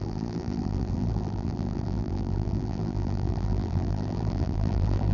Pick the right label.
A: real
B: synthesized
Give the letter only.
B